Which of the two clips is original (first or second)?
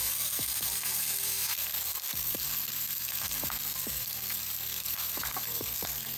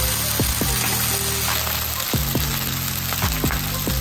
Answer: second